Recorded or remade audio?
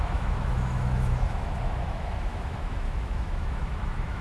remade